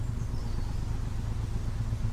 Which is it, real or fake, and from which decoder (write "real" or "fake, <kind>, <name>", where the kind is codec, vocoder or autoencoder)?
real